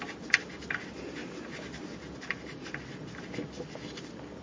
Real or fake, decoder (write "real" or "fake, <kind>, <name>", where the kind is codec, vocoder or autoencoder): real